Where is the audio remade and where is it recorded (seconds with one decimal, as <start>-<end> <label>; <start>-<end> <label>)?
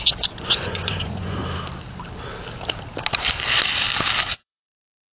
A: 0.0-1.4 remade; 1.4-4.2 recorded; 4.2-5.1 remade